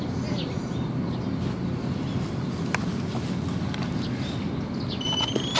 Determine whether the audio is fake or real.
real